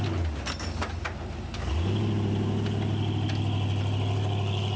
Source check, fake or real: real